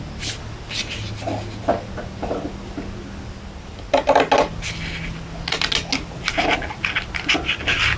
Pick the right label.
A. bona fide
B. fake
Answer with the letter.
A